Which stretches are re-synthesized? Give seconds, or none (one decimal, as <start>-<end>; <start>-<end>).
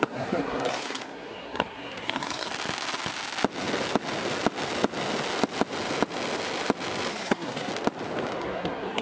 0.0-2.5; 7.1-7.7; 8.4-9.0